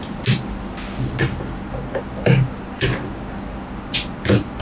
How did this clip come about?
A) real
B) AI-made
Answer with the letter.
A